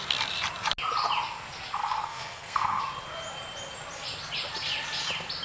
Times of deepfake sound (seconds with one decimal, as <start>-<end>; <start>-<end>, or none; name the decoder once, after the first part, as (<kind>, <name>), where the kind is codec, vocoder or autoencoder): 1.8-2.8 (codec, SNAC)